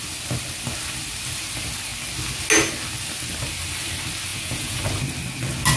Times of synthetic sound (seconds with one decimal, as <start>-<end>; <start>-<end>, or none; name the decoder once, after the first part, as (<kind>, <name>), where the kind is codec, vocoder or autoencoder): 4.3-4.8 (vocoder, Vocos)